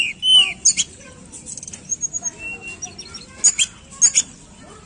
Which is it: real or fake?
real